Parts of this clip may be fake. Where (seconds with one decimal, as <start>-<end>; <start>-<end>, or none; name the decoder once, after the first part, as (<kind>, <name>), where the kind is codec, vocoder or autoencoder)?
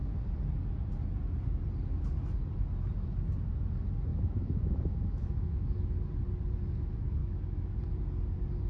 4.1-5.9 (autoencoder, DAC-VAE); 7.2-7.8